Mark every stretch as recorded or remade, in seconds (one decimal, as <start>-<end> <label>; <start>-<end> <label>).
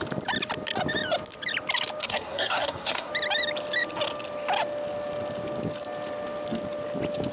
0.0-2.0 recorded; 2.0-3.1 remade; 3.1-7.3 recorded